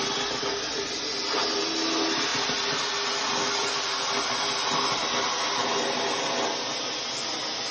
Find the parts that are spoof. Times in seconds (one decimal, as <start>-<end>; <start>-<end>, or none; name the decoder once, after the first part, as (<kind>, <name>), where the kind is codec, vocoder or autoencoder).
none

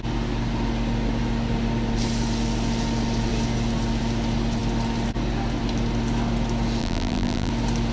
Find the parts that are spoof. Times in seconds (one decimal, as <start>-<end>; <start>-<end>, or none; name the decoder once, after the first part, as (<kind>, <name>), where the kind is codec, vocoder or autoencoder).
6.8-7.5 (vocoder, BigVGAN v2)

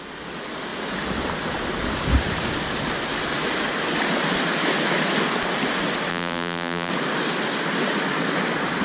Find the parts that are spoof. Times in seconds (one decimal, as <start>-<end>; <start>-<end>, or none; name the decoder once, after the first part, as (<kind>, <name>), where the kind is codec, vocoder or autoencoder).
6.1-6.9 (vocoder, BigVGAN v2)

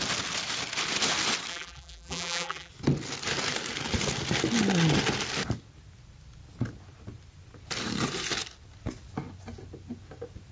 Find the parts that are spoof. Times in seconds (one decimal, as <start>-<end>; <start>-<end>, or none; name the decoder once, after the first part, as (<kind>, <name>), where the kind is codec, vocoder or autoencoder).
1.5-2.7 (vocoder, BigVGAN v2)

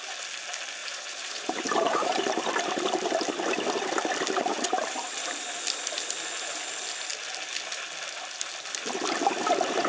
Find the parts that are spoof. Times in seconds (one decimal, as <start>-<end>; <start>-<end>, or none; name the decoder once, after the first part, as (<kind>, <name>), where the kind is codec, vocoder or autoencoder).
0.8-2.8 (vocoder, BigVGAN v2); 4.5-5.3